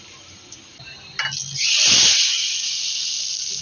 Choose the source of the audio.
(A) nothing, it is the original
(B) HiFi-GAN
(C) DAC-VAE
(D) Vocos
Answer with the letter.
A